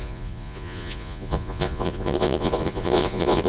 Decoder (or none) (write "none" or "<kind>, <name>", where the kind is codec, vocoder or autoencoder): vocoder, Vocos